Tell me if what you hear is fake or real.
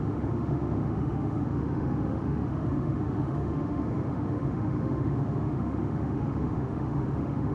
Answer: fake